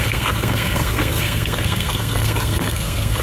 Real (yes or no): no